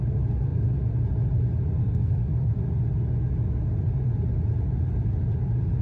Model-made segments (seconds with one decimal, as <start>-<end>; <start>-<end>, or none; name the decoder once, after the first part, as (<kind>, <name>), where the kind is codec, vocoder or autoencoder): 1.8-2.5 (codec, SNAC)